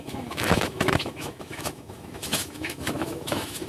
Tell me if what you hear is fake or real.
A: fake